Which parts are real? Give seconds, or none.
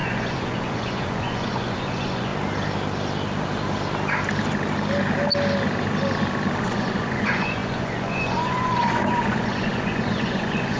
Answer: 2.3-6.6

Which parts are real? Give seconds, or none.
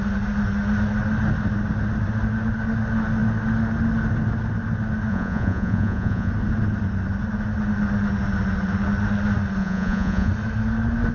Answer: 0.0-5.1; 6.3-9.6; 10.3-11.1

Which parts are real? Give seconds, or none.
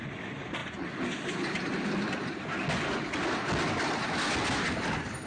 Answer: 0.0-5.3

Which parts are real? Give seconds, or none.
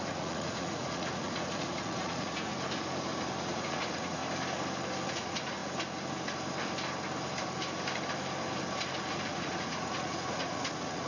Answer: 2.5-3.4; 4.2-5.1; 5.6-9.1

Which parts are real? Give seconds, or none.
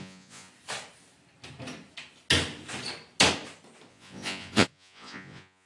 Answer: 0.5-3.9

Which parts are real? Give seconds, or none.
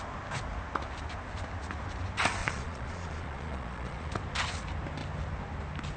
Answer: 0.0-2.4; 4.1-6.0